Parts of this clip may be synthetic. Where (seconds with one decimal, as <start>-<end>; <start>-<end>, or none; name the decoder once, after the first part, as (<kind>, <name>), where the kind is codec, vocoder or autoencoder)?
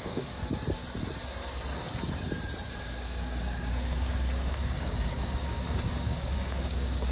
0.0-0.4 (codec, DAC); 2.7-7.1